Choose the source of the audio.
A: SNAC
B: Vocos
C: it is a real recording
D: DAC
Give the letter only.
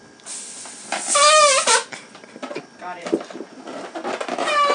C